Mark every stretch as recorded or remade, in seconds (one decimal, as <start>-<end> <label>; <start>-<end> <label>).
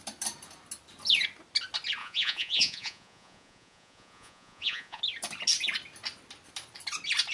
0.0-2.0 recorded; 2.0-5.0 remade; 5.0-7.3 recorded